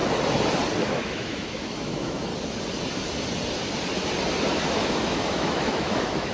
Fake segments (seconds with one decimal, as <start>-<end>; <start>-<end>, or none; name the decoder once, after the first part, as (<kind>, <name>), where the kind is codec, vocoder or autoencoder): 0.9-2.3 (autoencoder, DAC-VAE); 4.6-6.3